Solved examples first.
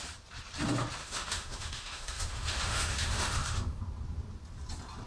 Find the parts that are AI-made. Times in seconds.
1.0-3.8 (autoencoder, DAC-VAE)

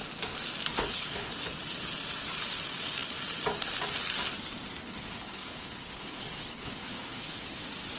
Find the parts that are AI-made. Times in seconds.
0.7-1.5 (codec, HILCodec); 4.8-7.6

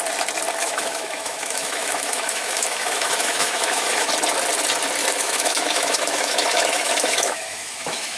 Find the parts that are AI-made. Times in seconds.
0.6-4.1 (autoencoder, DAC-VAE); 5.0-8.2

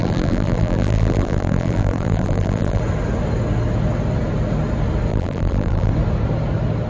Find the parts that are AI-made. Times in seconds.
0.0-2.8 (vocoder, BigVGAN v2); 5.1-5.9

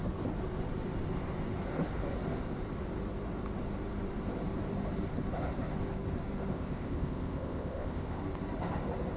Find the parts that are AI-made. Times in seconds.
6.5-8.2 (codec, ZipCodec)

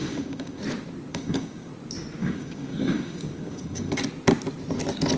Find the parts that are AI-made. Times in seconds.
0.0-0.6 (codec, DAC); 1.1-1.7; 2.2-4.0

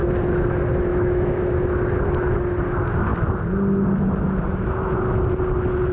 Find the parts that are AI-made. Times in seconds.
0.9-1.4 (autoencoder, DAC-VAE)

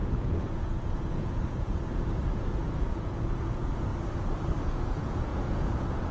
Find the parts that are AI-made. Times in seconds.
0.0-3.9 (vocoder, Vocos); 4.6-6.1